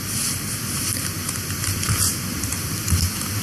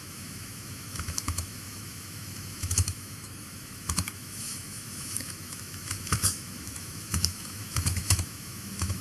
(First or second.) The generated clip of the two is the second